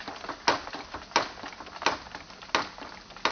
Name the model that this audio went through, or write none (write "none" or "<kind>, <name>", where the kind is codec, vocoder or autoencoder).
none